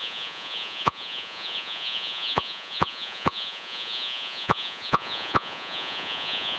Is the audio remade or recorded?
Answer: remade